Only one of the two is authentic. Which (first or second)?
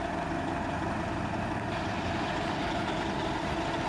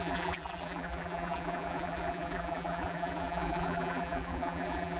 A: first